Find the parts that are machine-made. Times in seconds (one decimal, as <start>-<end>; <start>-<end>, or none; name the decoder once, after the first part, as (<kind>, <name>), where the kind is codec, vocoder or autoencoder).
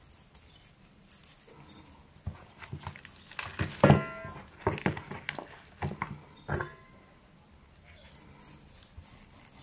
none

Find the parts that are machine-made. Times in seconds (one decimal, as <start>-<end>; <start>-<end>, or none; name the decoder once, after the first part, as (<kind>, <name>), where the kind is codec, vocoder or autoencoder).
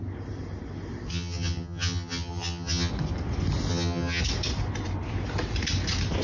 1.1-2.9 (vocoder, HiFi-GAN); 3.7-4.2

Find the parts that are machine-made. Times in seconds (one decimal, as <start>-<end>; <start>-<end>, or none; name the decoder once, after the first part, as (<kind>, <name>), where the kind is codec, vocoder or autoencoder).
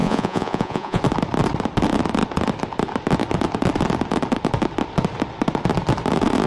0.0-1.0 (vocoder, Vocos)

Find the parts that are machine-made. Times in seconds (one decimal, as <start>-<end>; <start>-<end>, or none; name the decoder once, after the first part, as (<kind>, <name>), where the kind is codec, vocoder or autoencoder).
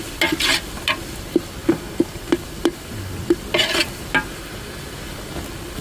none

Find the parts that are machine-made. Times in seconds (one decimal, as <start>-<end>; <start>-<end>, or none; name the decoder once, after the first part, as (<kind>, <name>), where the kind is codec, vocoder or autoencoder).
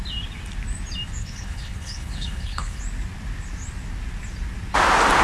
1.2-2.8 (codec, HILCodec)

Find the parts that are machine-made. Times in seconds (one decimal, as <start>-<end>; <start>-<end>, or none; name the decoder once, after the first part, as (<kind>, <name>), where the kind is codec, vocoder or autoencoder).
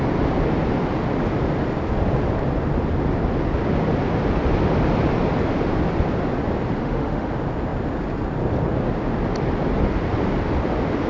6.8-7.3 (autoencoder, DAC-VAE)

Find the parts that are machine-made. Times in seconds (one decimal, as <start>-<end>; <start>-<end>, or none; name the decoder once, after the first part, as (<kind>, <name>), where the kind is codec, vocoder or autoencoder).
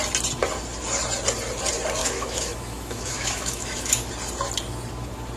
2.0-4.1 (autoencoder, DAC-VAE)